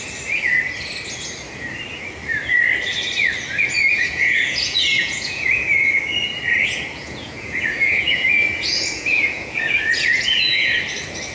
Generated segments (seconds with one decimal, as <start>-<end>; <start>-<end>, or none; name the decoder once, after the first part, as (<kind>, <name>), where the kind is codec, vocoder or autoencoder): 3.9-5.9 (vocoder, Vocos); 7.0-10.7